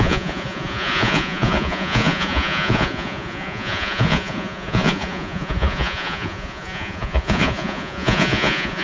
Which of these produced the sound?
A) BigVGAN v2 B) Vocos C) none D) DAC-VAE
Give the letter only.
B